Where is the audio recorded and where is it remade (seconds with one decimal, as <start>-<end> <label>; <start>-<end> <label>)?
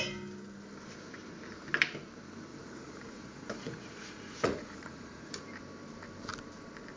0.0-2.5 recorded; 2.5-5.3 remade; 5.3-7.0 recorded